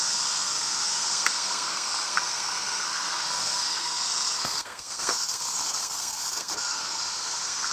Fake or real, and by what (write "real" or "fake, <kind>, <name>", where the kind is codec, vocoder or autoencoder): fake, codec, SNAC